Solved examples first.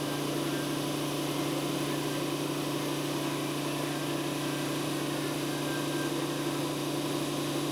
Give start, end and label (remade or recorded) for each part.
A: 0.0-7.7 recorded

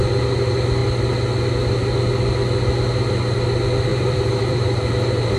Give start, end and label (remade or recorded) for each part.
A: 0.0-3.9 recorded; 3.9-5.4 remade

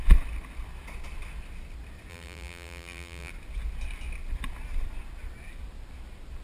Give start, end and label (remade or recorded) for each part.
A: 0.0-2.1 recorded; 2.1-3.3 remade; 3.3-6.4 recorded